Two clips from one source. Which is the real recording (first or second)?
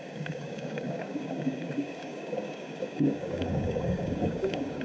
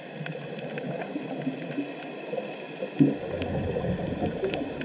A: second